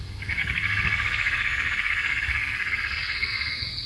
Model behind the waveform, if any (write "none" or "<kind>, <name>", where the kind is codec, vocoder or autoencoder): codec, SNAC